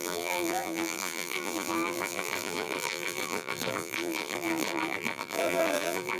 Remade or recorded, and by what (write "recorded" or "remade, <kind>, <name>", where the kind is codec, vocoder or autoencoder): remade, vocoder, BigVGAN v2